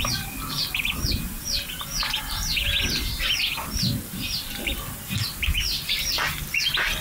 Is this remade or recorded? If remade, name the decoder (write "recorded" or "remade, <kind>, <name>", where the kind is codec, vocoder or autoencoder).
recorded